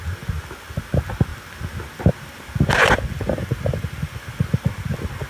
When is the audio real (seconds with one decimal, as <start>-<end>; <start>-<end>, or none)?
0.0-5.3